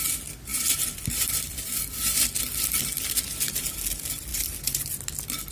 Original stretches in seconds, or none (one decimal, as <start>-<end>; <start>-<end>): 0.0-0.5; 2.4-4.3; 4.9-5.5